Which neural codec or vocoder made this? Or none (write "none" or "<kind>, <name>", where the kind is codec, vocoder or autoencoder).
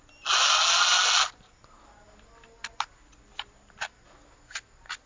none